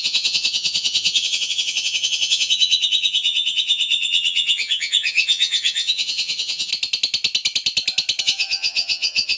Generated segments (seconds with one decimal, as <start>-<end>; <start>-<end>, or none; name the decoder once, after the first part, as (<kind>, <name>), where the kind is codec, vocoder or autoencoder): 0.0-6.7 (vocoder, HiFi-GAN); 8.2-9.4